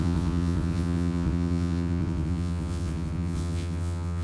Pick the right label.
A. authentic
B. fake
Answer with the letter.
B